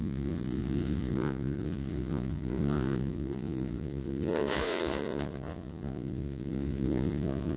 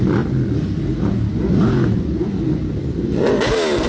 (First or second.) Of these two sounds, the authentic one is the second